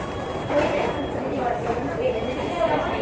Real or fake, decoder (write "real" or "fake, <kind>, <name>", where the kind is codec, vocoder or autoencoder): fake, vocoder, BigVGAN v2